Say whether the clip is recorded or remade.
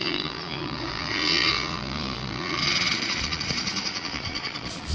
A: remade